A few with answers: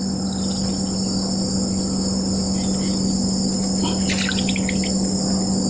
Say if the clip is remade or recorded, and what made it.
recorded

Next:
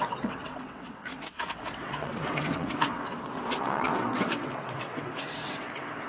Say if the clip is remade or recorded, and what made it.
remade, vocoder, WaveNeXt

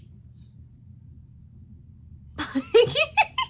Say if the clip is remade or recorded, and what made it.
recorded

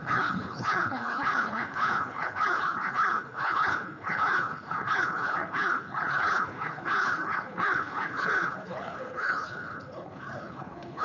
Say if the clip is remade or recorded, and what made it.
remade, codec, HILCodec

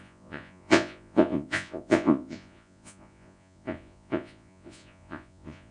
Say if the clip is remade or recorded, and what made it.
remade, vocoder, Vocos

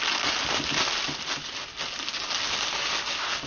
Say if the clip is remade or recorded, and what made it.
recorded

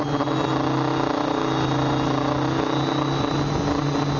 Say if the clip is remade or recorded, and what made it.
recorded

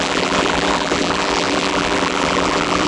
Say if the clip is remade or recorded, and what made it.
remade, vocoder, BigVGAN v2